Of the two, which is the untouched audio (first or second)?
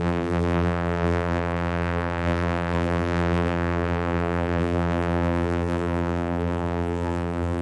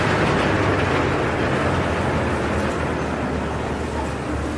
second